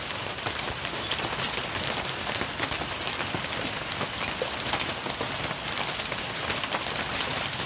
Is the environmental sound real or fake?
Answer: real